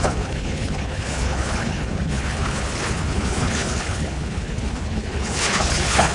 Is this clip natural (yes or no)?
no